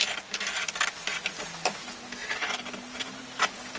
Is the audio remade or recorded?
recorded